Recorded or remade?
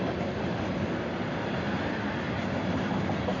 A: recorded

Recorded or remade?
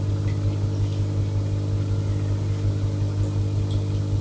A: recorded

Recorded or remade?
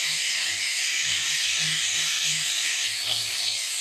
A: remade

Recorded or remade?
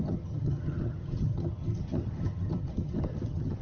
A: remade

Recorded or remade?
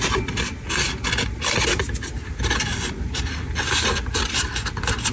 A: recorded